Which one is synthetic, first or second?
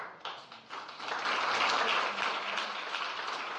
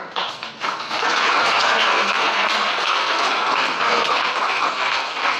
second